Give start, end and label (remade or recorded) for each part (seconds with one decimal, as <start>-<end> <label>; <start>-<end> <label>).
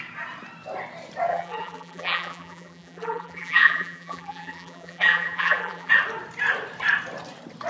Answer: 0.0-1.3 recorded; 1.3-5.9 remade; 5.9-7.7 recorded